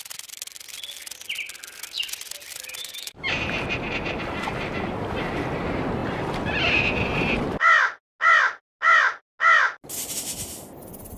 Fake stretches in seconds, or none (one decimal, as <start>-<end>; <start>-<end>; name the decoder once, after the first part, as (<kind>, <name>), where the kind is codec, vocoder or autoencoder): 2.8-3.3 (autoencoder, DAC-VAE)